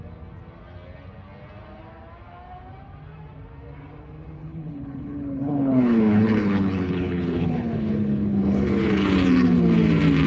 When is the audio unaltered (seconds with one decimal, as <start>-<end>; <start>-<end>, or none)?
0.0-4.4; 9.1-10.3